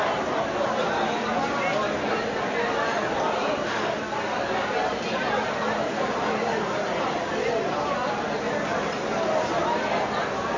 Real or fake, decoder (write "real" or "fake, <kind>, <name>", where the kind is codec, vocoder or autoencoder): real